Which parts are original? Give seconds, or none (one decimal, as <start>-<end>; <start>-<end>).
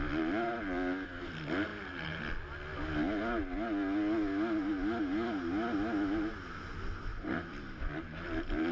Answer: 0.0-1.7; 2.2-7.1